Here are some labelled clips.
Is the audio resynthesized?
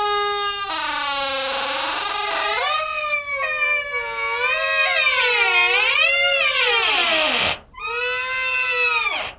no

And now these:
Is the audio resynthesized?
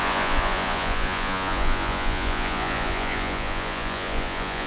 yes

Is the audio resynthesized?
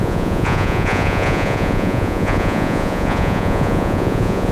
yes